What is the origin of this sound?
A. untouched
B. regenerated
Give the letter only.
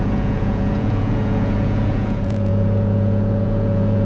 B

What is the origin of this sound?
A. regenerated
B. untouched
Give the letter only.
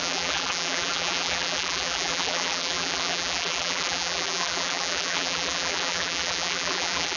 A